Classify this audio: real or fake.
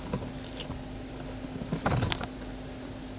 real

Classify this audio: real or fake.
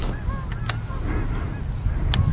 real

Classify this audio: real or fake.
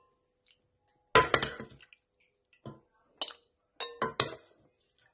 real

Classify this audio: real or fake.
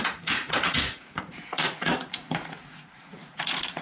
fake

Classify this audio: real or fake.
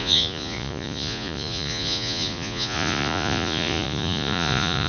fake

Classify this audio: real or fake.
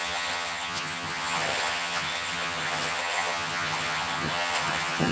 fake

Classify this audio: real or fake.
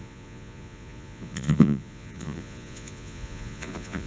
fake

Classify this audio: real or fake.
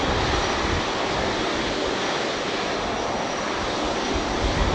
real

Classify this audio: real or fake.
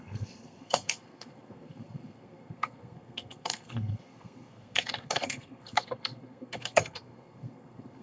fake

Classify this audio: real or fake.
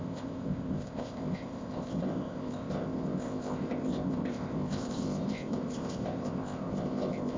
fake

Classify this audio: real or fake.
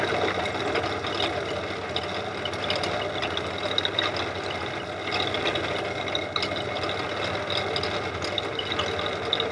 real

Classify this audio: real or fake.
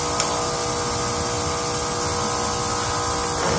real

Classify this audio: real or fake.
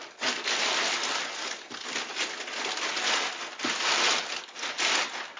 real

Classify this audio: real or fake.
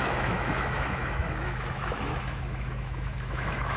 fake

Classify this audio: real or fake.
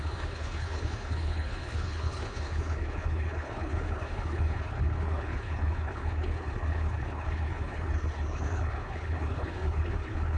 fake